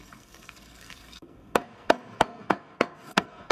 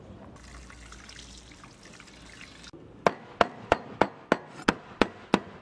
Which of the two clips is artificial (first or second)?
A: first